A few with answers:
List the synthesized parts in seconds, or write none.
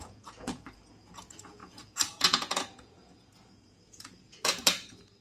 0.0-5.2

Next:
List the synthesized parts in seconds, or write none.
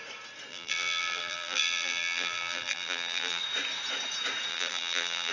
0.5-3.4; 4.5-5.3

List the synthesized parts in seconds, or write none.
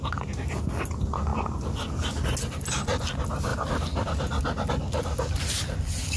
none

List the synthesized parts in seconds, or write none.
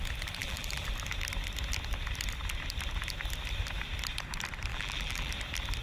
0.4-0.9; 4.7-5.3